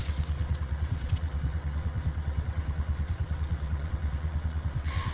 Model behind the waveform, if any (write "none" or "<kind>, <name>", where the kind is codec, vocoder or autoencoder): vocoder, WaveNeXt